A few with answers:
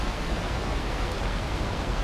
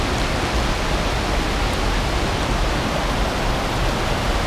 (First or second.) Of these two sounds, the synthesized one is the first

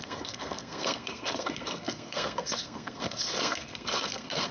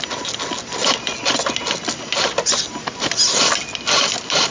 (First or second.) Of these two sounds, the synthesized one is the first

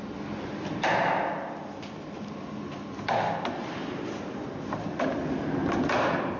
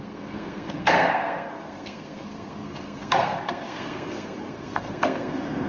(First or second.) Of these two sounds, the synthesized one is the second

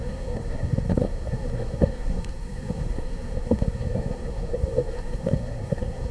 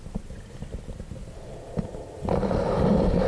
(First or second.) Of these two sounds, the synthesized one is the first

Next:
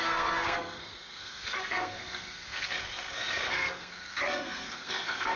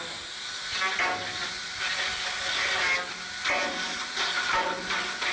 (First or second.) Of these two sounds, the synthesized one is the first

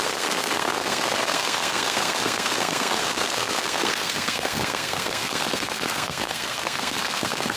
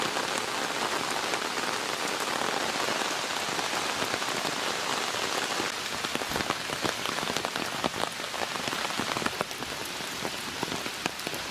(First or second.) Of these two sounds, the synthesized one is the first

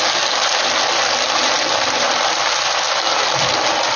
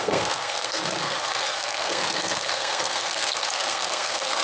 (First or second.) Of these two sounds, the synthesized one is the second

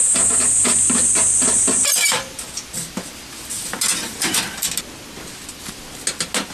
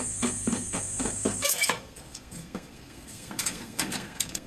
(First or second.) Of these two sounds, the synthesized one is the second